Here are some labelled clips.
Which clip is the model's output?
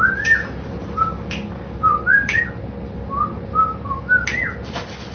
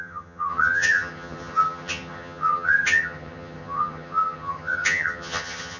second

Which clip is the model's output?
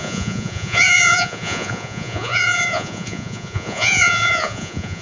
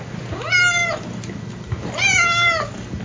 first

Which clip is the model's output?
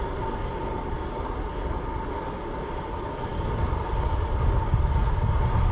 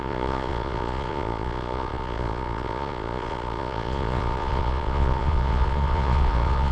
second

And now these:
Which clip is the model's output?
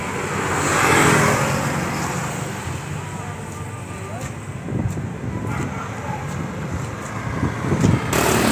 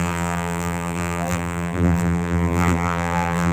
second